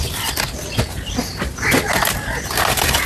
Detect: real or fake real